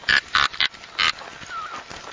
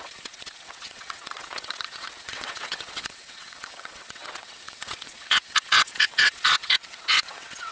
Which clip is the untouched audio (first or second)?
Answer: first